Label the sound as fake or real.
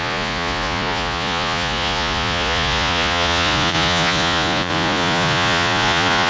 fake